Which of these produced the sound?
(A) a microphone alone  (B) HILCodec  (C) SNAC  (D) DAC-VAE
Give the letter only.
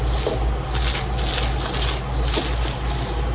A